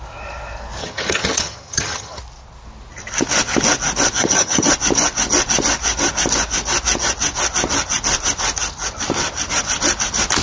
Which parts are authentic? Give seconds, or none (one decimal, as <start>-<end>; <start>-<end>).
0.0-0.8; 2.2-4.2; 4.7-10.4